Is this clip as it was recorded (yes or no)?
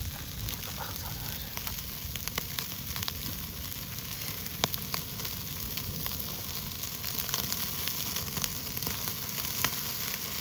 yes